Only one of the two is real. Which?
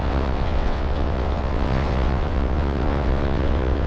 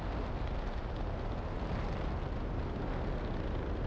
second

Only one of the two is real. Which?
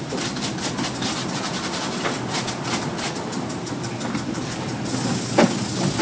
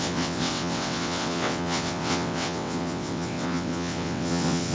first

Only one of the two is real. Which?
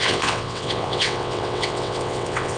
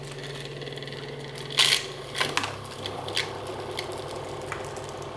second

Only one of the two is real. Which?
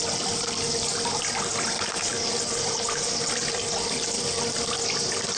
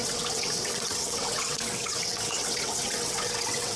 first